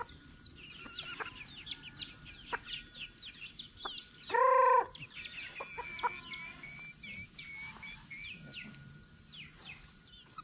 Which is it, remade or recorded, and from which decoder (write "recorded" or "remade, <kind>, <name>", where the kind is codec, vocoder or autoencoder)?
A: recorded